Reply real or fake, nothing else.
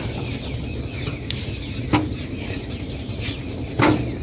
real